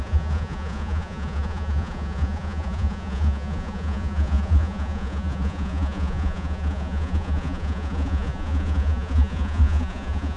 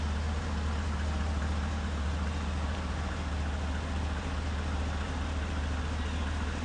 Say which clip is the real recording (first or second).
second